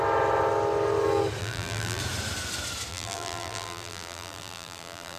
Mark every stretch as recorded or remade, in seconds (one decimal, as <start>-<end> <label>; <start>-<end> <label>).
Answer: 0.0-1.4 recorded; 1.4-2.0 remade; 2.0-2.9 recorded; 2.9-5.2 remade